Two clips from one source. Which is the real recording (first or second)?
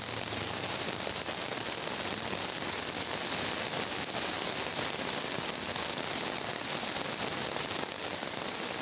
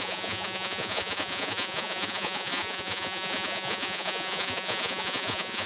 first